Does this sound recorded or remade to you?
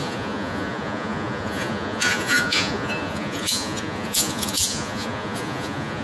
remade